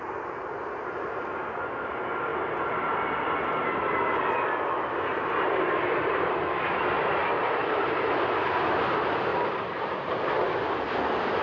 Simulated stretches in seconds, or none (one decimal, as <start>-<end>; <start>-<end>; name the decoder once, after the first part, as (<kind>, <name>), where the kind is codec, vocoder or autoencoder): 5.1-5.8 (vocoder, BigVGAN v2); 7.2-8.1; 9.3-10.2